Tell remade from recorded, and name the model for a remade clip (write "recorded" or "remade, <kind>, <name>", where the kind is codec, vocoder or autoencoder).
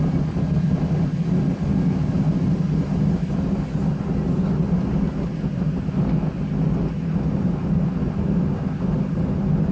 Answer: recorded